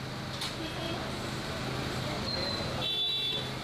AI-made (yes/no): no